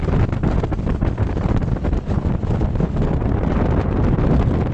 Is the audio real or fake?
real